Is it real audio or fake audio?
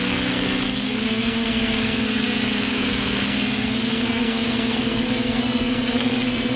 fake